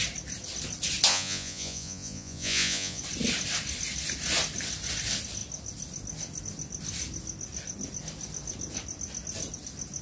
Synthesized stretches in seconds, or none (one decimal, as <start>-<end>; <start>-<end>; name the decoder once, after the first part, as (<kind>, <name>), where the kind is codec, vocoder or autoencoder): 1.1-3.0 (vocoder, Vocos)